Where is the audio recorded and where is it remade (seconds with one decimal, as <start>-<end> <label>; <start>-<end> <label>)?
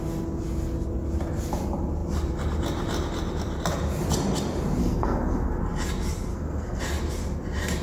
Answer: 0.0-4.8 recorded; 4.8-5.6 remade; 5.6-6.3 recorded; 6.3-6.8 remade; 6.8-7.8 recorded